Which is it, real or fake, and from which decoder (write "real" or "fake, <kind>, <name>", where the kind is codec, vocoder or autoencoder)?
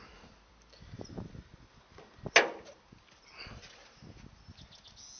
real